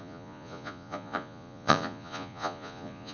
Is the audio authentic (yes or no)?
no